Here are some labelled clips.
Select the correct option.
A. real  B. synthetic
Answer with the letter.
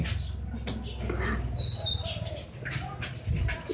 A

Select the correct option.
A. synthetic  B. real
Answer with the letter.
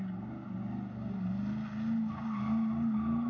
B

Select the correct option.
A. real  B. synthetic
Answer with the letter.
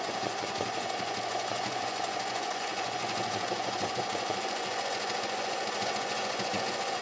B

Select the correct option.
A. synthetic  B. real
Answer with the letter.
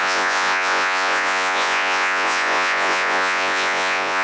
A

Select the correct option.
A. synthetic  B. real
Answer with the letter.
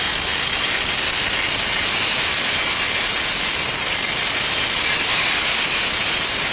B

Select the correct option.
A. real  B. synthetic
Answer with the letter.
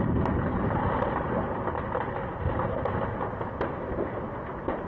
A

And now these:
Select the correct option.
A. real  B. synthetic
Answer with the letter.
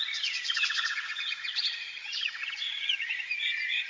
B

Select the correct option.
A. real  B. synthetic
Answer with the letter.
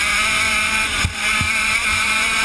B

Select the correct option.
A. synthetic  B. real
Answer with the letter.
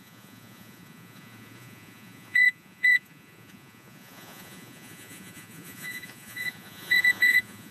A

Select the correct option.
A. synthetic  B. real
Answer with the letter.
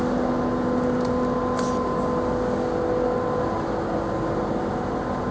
B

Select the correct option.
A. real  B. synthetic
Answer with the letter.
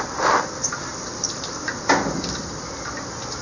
A